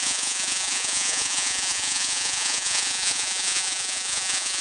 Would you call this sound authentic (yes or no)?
no